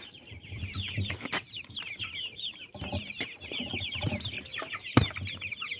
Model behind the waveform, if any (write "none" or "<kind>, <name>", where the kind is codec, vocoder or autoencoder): vocoder, BigVGAN v2